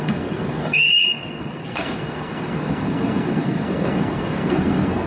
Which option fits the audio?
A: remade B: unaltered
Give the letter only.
A